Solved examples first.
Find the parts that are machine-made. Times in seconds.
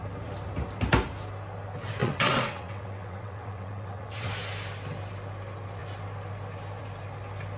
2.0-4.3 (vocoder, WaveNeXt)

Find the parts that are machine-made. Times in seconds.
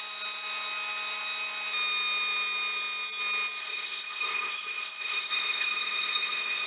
3.6-6.7 (codec, ZipCodec)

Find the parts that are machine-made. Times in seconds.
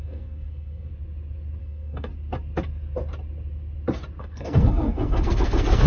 0.0-0.9 (codec, SNAC); 1.6-2.1; 4.2-5.9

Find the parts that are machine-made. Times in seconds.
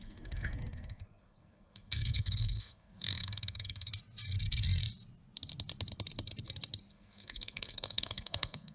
0.0-3.9 (codec, SNAC); 6.9-8.7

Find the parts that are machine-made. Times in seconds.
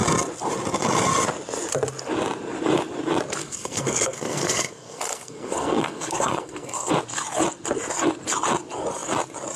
3.4-6.9 (codec, SNAC)